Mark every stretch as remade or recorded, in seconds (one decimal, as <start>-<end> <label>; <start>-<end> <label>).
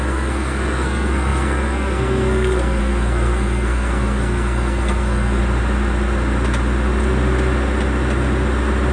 0.0-5.4 remade; 5.4-8.9 recorded